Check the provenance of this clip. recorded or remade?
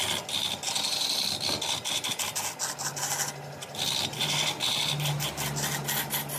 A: recorded